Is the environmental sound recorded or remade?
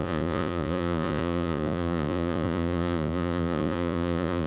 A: remade